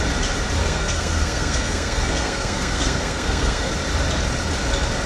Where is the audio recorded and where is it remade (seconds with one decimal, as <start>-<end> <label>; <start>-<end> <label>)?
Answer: 0.0-0.6 recorded; 0.6-3.7 remade; 3.7-5.1 recorded